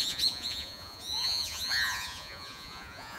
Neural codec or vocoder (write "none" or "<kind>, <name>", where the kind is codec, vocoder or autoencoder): vocoder, Vocos